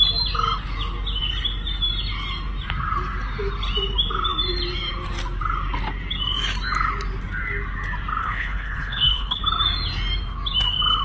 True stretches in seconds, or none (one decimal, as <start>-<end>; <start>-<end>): 0.0-8.2; 9.4-11.0